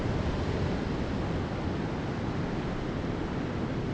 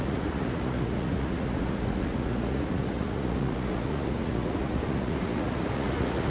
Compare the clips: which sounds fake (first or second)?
second